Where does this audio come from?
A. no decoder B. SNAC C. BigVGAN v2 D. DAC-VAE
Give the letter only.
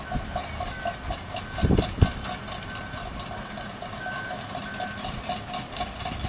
A